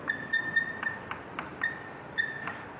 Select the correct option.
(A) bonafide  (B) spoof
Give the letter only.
A